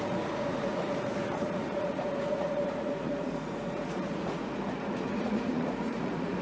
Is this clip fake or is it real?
fake